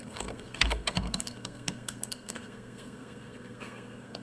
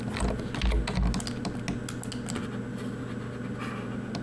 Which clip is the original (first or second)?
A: second